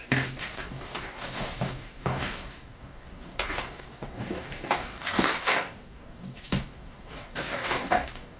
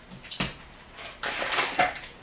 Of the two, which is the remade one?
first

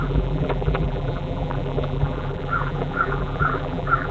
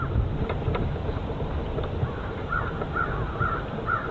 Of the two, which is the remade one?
first